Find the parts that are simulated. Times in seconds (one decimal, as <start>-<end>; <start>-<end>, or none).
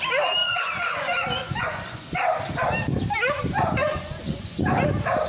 0.4-2.2; 3.8-4.6